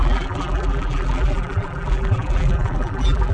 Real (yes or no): no